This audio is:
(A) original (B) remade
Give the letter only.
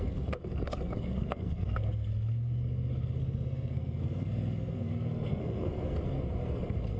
B